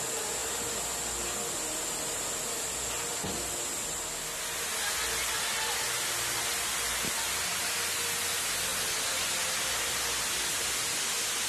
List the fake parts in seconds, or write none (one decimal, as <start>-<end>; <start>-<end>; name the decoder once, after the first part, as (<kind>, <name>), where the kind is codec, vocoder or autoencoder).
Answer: none